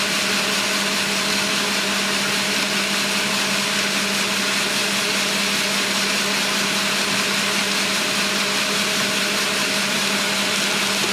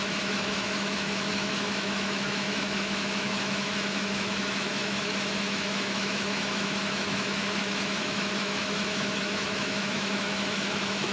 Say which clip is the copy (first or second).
second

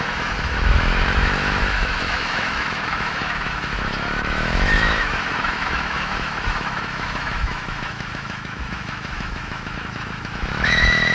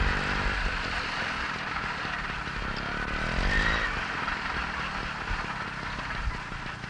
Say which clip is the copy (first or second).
first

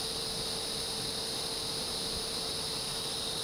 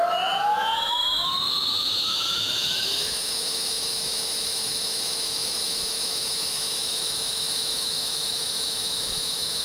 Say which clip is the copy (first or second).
second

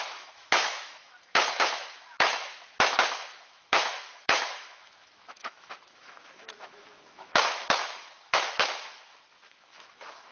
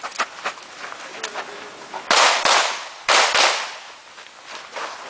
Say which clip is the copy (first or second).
first